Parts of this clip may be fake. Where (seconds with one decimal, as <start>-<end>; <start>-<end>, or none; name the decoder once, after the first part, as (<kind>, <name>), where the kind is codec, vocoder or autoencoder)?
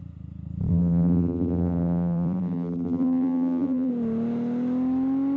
0.7-3.9 (vocoder, BigVGAN v2)